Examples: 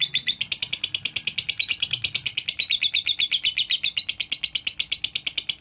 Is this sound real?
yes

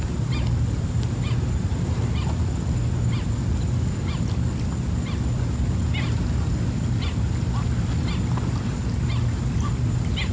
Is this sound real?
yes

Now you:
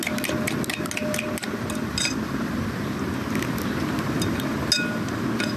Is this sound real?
yes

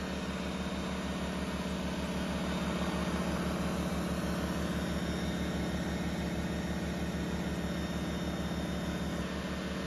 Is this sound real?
yes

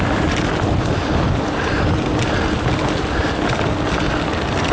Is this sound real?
yes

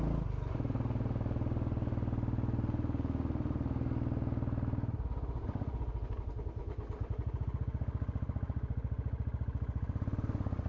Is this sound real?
yes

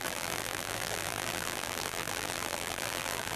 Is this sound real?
no